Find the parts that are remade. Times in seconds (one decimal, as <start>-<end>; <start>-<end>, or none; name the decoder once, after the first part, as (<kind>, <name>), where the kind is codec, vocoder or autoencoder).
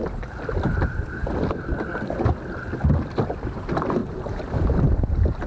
none